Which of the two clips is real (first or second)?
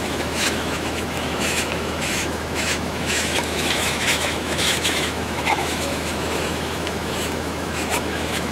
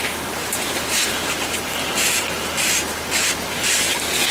second